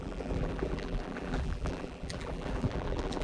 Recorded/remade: remade